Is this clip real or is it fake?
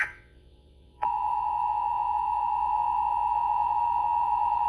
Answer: fake